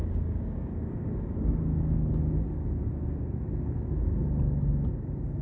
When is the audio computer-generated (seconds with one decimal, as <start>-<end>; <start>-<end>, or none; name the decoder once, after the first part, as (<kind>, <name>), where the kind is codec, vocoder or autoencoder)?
0.0-2.2 (codec, DAC)